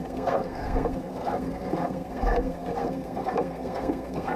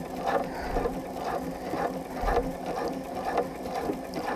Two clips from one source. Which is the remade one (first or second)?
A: first